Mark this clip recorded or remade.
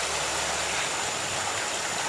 recorded